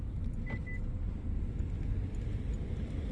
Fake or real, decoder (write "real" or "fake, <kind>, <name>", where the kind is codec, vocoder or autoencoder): real